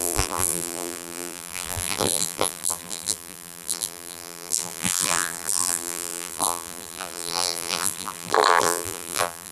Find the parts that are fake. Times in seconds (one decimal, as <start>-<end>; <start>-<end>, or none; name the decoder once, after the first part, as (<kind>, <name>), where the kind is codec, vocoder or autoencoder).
0.0-9.5 (vocoder, BigVGAN v2)